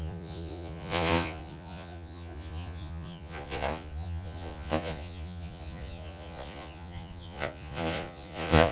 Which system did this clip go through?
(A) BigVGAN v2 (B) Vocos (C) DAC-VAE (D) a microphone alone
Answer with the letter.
B